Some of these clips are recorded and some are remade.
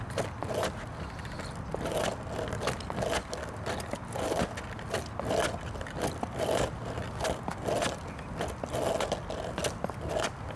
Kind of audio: recorded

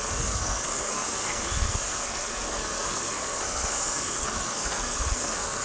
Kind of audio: remade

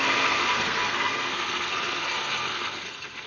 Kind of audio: remade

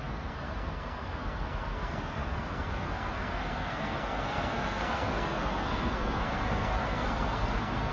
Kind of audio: remade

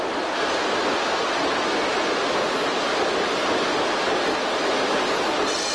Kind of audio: recorded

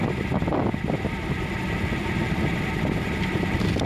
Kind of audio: recorded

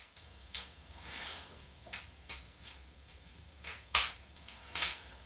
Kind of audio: remade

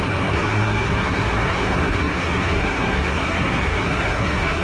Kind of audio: remade